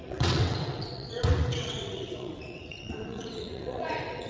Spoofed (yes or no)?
yes